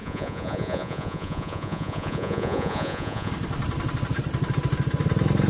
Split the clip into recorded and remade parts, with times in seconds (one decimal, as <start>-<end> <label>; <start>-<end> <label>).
0.0-3.3 remade; 3.3-5.5 recorded